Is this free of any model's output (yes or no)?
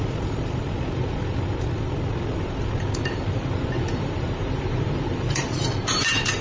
no